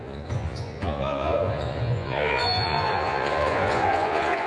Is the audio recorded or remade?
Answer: remade